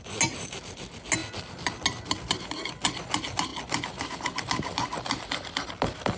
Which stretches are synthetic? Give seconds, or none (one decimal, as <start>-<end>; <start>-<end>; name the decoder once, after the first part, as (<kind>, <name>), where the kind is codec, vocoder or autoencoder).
none